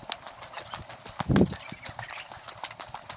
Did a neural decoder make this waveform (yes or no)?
no